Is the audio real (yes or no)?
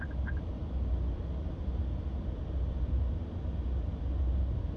yes